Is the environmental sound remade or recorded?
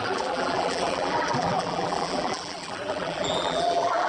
remade